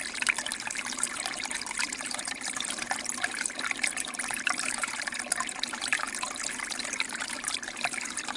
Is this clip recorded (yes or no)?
no